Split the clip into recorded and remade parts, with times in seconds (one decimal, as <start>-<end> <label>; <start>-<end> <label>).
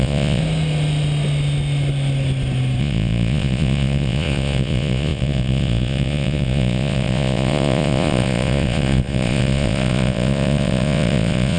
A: 0.0-0.4 remade; 0.4-2.8 recorded; 2.8-11.6 remade